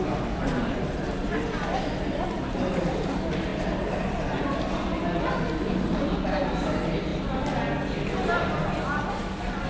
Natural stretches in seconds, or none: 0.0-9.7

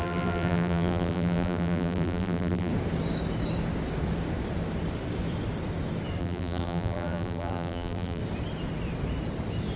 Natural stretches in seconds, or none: 2.7-6.2; 8.2-9.8

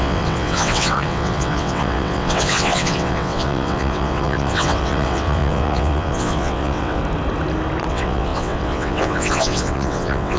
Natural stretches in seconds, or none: 7.0-7.9

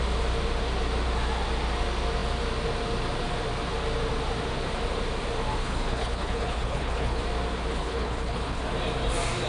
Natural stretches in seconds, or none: 0.0-5.6; 7.2-7.8; 8.6-9.5